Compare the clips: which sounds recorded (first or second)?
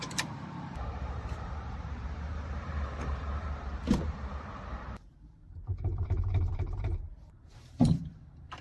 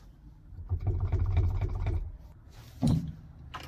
second